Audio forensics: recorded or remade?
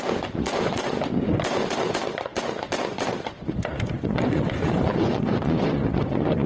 remade